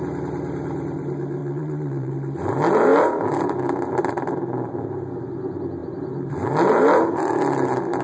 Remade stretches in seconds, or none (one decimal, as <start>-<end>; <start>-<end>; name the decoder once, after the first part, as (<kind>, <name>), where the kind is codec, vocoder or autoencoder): 1.4-2.1 (vocoder, Vocos)